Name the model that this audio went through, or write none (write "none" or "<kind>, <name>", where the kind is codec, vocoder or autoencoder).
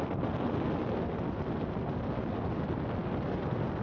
none